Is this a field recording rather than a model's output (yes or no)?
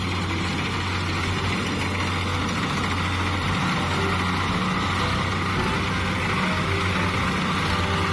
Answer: yes